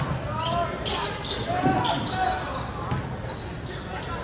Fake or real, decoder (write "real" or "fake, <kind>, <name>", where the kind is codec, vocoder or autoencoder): real